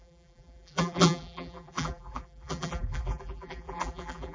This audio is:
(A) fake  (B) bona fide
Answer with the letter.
A